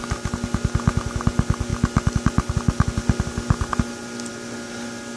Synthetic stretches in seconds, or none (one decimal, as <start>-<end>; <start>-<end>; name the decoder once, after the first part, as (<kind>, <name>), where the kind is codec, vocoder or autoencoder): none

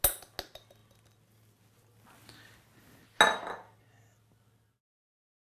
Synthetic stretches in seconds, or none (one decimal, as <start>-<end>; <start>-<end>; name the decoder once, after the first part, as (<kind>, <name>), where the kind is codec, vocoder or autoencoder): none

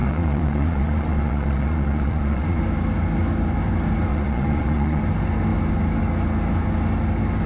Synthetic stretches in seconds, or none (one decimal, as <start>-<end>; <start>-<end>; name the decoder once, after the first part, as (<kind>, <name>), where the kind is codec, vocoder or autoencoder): 0.0-2.6 (vocoder, Vocos); 4.1-5.0

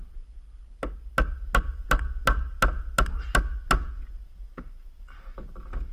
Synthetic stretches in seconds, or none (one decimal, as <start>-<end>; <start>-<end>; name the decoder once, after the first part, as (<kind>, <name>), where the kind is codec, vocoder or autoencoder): 4.2-5.5 (vocoder, BigVGAN v2)

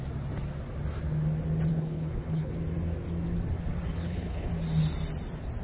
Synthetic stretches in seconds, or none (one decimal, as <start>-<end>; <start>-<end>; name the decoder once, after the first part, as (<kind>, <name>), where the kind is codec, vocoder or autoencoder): 1.7-2.5 (codec, HILCodec); 4.0-4.5

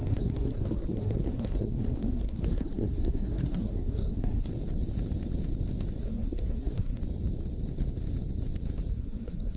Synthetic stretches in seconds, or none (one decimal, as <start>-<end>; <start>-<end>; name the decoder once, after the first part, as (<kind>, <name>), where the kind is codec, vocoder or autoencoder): 0.0-4.5 (codec, SNAC); 6.0-7.0; 8.9-9.6

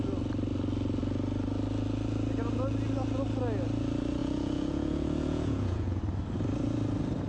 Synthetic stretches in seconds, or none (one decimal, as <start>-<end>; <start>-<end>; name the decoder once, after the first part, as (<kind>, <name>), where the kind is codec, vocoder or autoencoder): 4.2-6.0 (vocoder, Vocos)

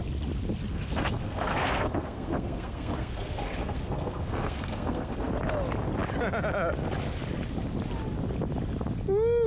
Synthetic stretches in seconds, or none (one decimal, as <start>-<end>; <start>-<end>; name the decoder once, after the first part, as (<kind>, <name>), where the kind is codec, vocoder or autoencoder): 0.7-5.3 (codec, SNAC)